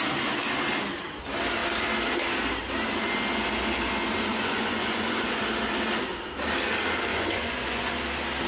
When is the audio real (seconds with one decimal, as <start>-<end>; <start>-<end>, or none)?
0.0-4.3; 5.4-7.1; 7.9-8.5